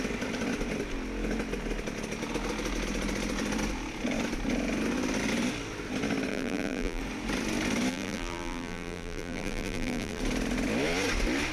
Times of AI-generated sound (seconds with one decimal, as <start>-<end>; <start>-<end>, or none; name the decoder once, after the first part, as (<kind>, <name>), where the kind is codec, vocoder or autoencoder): 6.3-7.0 (vocoder, BigVGAN v2); 7.9-10.2